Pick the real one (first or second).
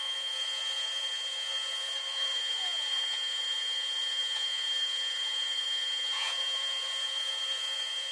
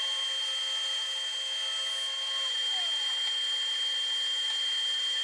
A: second